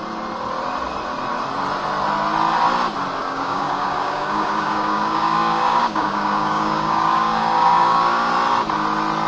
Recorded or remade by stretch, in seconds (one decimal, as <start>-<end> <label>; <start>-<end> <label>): 0.0-3.2 recorded; 3.2-8.3 remade; 8.3-9.3 recorded